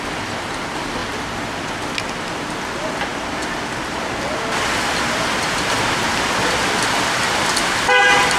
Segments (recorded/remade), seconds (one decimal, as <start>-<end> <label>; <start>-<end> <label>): 0.0-1.0 recorded; 1.0-2.6 remade; 2.6-3.1 recorded; 3.1-7.6 remade; 7.6-8.4 recorded